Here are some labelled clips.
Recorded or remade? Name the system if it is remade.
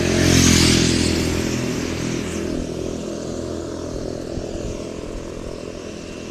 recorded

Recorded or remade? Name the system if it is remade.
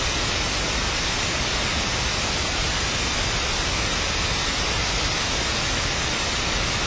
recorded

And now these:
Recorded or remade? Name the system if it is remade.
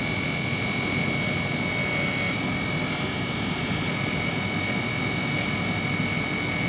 recorded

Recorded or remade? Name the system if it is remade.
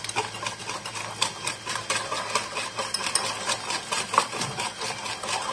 recorded